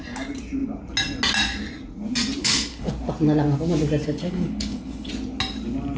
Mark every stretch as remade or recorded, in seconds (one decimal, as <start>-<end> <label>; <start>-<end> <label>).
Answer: 0.0-2.4 recorded; 2.4-2.9 remade; 2.9-4.0 recorded; 4.0-5.1 remade; 5.1-6.0 recorded